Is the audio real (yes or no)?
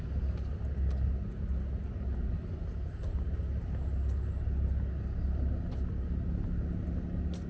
yes